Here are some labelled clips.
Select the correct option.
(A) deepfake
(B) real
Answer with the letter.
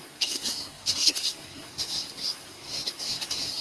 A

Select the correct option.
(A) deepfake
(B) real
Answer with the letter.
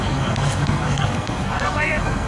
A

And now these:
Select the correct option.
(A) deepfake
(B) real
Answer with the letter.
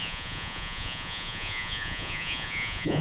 A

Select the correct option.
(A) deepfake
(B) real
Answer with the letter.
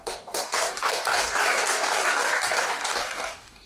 A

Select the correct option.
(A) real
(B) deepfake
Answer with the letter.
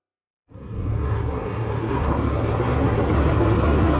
B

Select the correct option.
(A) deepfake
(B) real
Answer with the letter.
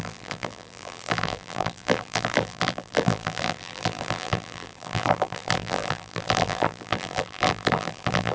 A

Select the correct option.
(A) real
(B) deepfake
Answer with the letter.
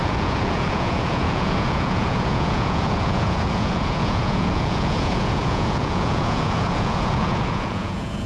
B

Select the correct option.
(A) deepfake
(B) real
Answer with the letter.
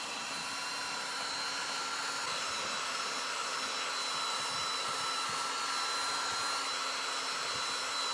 B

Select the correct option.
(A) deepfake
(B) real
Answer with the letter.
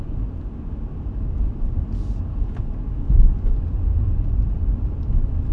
B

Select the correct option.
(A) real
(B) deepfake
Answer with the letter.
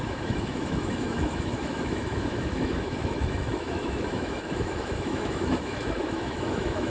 B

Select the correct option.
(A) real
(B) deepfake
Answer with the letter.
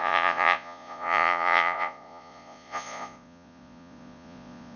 B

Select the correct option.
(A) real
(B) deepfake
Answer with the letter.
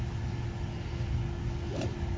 A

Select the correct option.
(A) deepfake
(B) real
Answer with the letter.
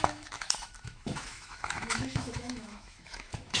A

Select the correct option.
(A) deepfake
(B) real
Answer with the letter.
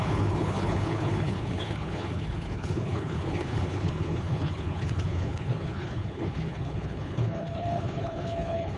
A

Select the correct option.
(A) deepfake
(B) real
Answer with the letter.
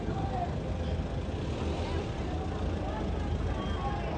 B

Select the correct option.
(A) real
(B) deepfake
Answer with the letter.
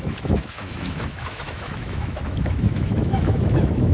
B